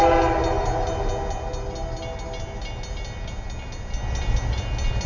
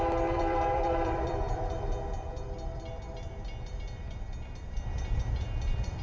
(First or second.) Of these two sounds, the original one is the first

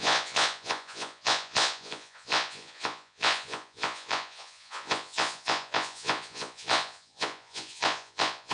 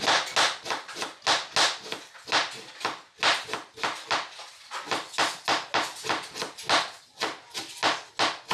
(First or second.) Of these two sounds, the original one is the second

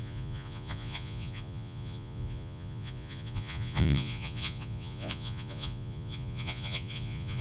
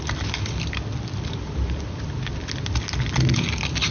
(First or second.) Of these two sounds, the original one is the second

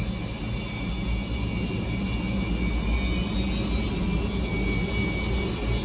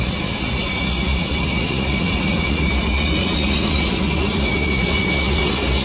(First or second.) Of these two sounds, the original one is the first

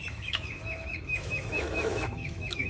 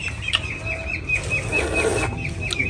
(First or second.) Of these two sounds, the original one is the second